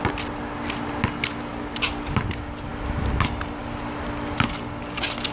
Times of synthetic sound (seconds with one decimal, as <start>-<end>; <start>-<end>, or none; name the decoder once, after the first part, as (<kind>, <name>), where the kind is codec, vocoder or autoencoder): none